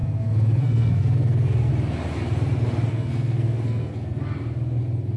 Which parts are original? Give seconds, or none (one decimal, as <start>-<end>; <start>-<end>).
1.7-2.9; 4.2-5.2

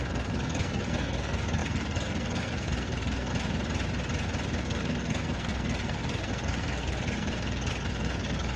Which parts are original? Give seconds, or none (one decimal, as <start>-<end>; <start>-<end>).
3.3-4.6

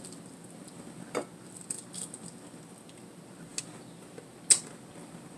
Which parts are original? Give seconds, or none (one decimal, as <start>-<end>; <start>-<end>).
0.0-5.4